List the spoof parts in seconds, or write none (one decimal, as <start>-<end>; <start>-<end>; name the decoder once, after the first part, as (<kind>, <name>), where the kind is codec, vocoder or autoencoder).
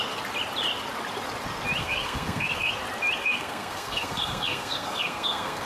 1.8-2.7 (codec, SNAC); 3.2-5.7